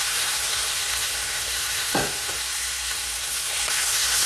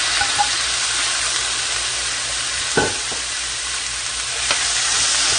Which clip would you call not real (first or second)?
first